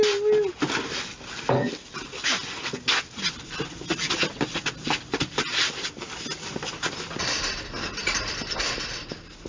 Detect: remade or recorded recorded